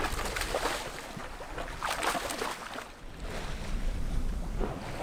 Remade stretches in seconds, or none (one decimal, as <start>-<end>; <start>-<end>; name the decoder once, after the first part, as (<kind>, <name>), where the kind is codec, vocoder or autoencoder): none